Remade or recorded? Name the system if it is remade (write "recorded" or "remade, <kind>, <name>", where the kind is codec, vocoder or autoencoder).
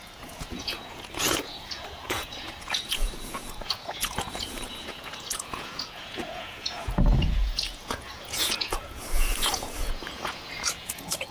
remade, vocoder, Vocos